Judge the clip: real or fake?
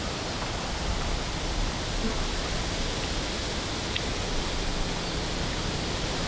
real